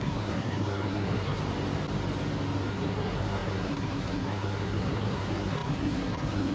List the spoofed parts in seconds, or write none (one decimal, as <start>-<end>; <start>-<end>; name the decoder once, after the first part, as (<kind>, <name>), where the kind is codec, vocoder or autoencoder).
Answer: 0.0-1.4 (codec, SNAC); 2.7-6.5